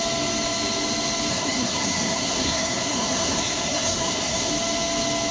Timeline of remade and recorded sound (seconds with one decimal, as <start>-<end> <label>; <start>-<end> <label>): 0.0-1.3 recorded; 1.3-4.5 remade; 4.5-5.3 recorded